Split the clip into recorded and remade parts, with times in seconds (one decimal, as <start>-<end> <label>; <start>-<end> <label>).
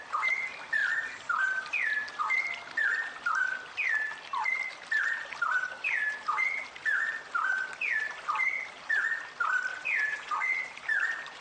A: 0.0-9.7 recorded; 9.7-10.6 remade; 10.6-11.4 recorded